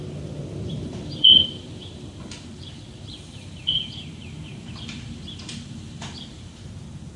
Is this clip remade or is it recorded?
remade